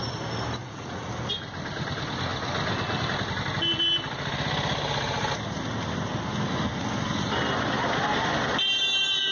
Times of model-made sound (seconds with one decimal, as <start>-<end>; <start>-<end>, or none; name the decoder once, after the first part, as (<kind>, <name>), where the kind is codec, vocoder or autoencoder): 0.6-1.1 (vocoder, Vocos)